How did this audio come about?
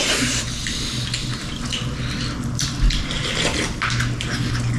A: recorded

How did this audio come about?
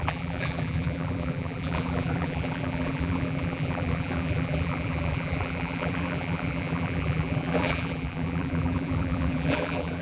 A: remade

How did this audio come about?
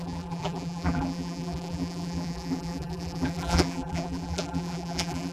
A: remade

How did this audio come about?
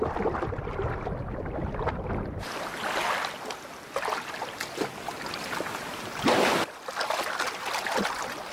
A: recorded